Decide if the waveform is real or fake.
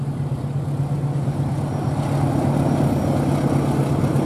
real